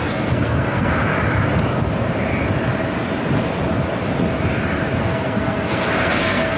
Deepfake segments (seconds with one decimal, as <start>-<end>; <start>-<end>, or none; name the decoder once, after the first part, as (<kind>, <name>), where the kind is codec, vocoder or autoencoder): 0.0-1.0 (codec, SNAC); 5.0-6.6